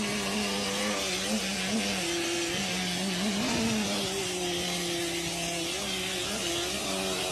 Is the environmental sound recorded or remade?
recorded